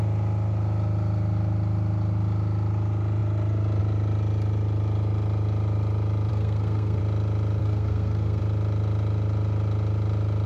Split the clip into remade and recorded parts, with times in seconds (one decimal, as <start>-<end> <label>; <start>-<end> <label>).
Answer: 0.0-6.3 recorded; 6.3-7.0 remade; 7.0-7.6 recorded; 7.6-8.4 remade; 8.4-10.5 recorded